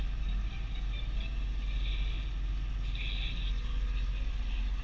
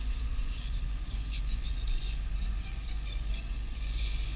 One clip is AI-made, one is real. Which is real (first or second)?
first